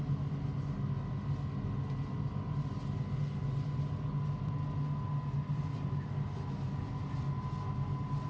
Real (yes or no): yes